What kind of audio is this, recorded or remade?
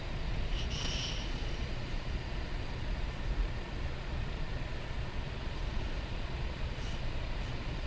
remade